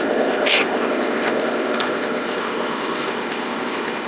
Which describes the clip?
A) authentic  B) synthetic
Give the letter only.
B